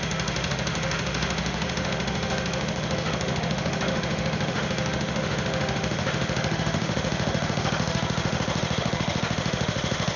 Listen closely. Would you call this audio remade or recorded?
remade